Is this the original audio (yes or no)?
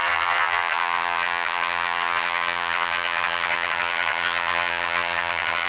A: no